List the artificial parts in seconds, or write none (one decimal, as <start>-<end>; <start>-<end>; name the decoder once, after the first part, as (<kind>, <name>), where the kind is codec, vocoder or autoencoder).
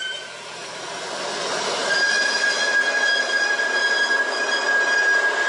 none